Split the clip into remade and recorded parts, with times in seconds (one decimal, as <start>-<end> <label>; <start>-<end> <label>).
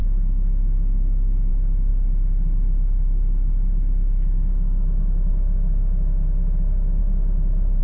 0.0-1.5 remade; 1.5-7.0 recorded; 7.0-7.8 remade